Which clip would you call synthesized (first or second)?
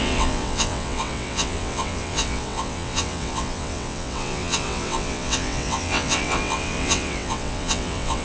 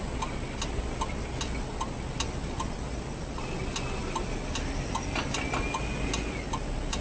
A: first